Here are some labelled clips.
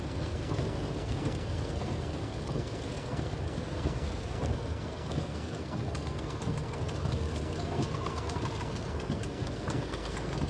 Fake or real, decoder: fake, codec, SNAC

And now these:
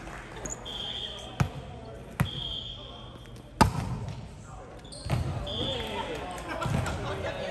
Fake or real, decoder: real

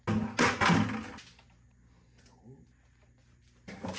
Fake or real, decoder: real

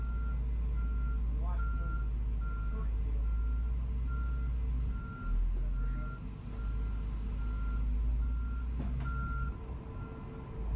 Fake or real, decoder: real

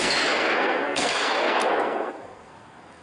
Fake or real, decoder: fake, codec, SNAC